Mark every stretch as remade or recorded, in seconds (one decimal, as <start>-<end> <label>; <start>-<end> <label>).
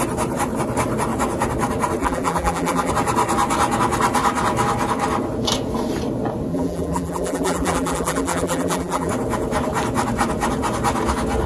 0.0-2.0 recorded; 2.0-2.9 remade; 2.9-6.5 recorded; 6.5-9.1 remade; 9.1-11.5 recorded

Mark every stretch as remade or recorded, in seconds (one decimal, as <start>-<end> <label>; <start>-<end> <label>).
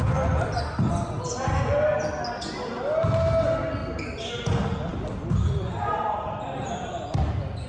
0.0-4.9 recorded; 4.9-5.7 remade; 5.7-7.7 recorded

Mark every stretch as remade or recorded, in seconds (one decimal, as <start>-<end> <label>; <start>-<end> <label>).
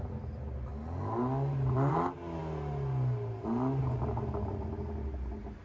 0.0-5.6 recorded